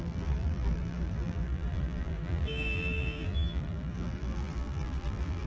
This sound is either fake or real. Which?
fake